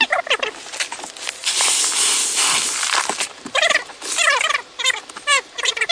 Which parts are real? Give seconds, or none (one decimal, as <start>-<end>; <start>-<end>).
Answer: 0.0-5.9